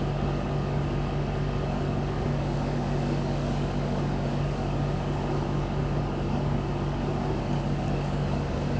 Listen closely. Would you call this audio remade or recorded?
remade